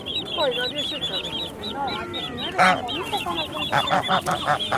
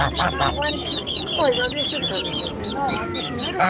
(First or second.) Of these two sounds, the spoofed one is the second